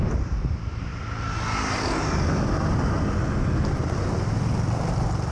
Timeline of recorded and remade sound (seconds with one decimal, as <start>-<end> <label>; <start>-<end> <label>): 0.0-0.9 remade; 0.9-4.0 recorded; 4.0-5.3 remade